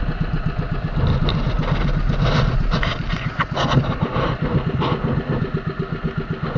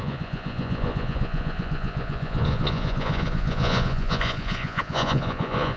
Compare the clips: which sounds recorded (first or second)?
first